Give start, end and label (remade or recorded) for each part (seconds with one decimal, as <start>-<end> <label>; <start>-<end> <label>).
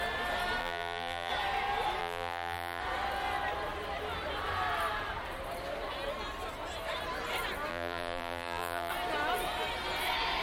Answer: 0.0-0.6 recorded; 0.6-1.3 remade; 1.3-2.0 recorded; 2.0-2.8 remade; 2.8-7.7 recorded; 7.7-8.9 remade; 8.9-10.4 recorded